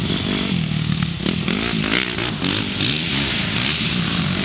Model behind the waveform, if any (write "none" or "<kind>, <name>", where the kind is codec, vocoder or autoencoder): none